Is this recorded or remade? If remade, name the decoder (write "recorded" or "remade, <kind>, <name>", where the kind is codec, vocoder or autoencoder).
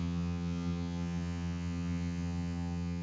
remade, vocoder, HiFi-GAN